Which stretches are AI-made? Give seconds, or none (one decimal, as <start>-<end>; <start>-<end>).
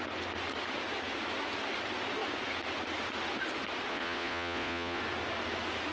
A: 3.9-5.0